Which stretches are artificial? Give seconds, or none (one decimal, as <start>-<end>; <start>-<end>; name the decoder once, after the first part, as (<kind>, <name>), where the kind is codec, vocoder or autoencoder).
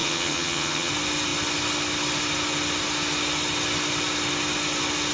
0.0-0.9 (vocoder, HiFi-GAN)